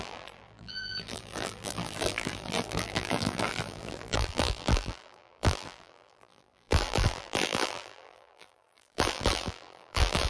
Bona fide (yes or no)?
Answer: no